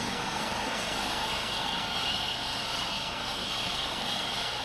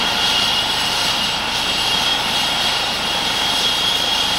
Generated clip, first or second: first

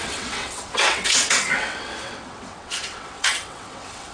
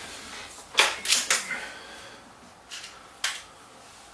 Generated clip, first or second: first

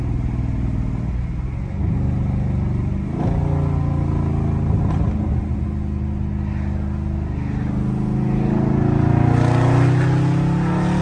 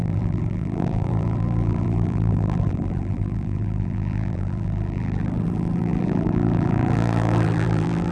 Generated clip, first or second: second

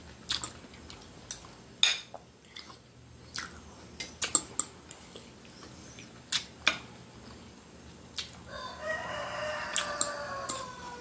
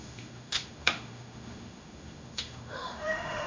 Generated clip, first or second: second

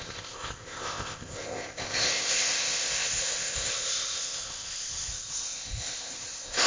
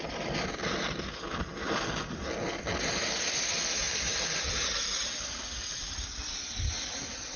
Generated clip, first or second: first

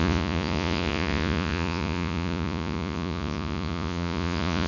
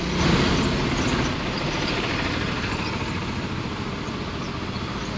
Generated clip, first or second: first